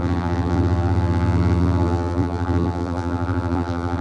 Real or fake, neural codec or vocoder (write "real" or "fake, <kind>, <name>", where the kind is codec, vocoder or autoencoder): fake, vocoder, BigVGAN v2